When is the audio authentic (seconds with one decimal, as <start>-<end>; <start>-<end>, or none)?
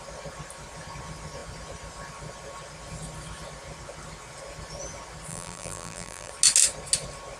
0.0-5.3; 6.3-7.4